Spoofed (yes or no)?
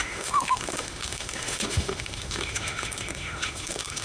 yes